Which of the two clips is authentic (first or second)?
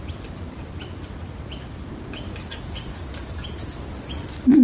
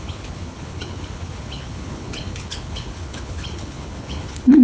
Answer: first